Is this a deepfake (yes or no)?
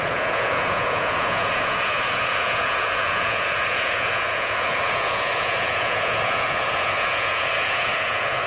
yes